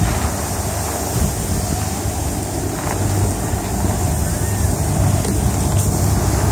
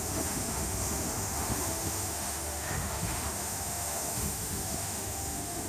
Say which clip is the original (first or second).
first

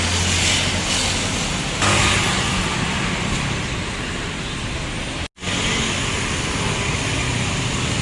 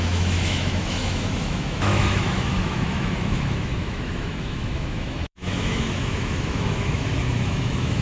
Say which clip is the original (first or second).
first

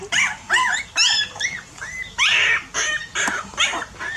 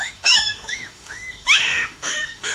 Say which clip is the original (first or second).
first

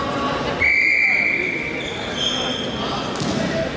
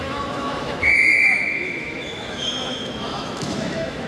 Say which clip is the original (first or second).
first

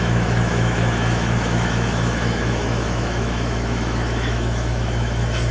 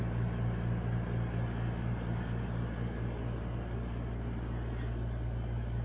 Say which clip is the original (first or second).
second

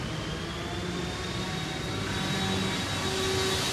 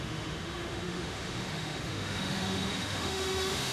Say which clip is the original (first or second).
first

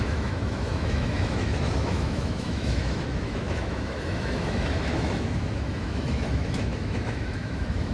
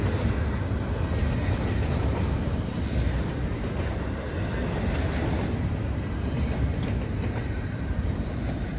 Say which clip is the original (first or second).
second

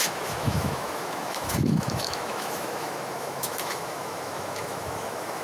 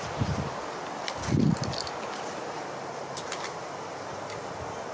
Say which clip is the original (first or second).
second